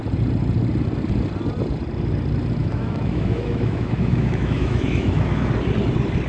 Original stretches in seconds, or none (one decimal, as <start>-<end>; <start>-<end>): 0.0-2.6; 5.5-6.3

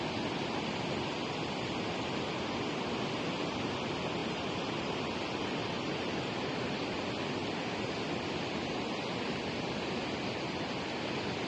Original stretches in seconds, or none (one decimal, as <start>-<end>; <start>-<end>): 0.0-4.2; 5.0-5.6; 6.6-11.5

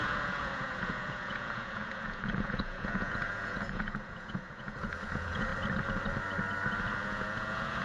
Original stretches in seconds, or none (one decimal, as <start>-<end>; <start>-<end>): 5.5-7.0

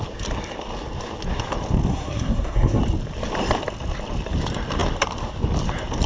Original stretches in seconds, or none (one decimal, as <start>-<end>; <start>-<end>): 0.0-1.9; 2.8-6.1

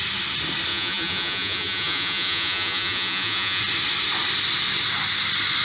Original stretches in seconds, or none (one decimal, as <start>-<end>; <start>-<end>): 0.0-0.7; 3.6-5.6

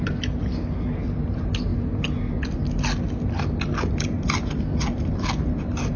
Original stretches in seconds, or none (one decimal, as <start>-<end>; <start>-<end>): 0.0-6.0